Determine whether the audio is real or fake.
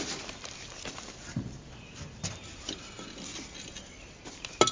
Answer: real